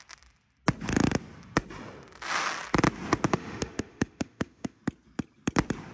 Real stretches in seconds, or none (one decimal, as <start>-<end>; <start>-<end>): 0.0-3.3; 4.8-5.9